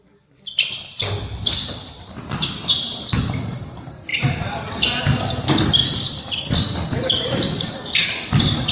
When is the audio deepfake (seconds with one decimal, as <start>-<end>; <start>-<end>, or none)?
4.1-4.7